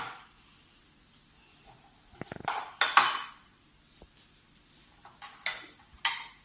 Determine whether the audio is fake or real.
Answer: fake